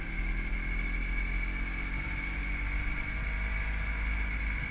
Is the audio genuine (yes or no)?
yes